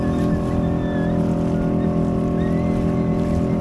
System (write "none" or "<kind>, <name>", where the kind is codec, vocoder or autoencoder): none